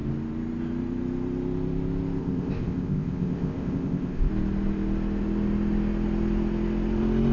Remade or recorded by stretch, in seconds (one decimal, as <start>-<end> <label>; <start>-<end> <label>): 0.0-2.2 recorded; 2.2-4.3 remade; 4.3-7.3 recorded